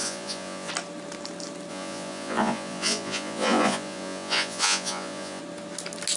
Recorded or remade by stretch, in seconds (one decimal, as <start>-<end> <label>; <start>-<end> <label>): 0.0-0.7 remade; 0.7-1.7 recorded; 1.7-5.4 remade; 5.4-6.2 recorded